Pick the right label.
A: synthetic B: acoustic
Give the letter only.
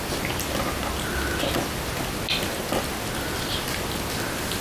B